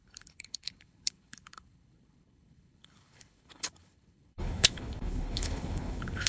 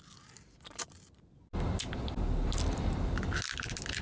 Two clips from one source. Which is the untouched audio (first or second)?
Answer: second